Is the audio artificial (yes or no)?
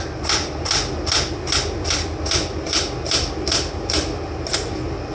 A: no